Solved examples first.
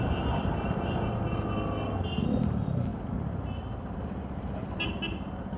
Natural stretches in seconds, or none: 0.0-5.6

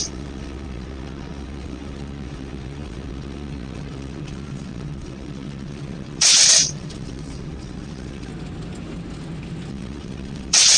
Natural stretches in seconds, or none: 8.3-9.7

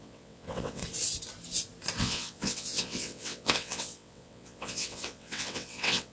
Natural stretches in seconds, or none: 0.8-2.0

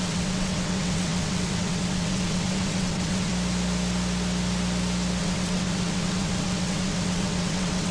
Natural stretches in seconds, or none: 3.3-5.2

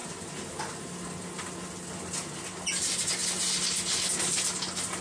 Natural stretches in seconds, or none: 0.0-5.0

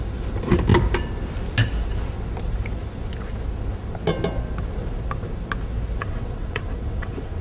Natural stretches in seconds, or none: 0.0-6.0

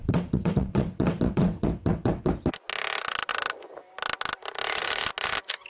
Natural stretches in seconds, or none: 2.3-5.7

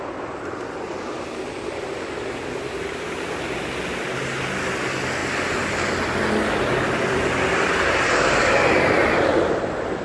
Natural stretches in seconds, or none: 0.0-10.0